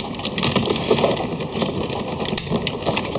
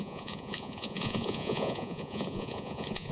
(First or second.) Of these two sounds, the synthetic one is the second